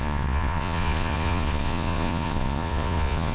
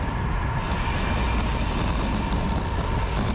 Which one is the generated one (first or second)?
first